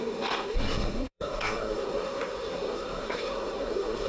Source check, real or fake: fake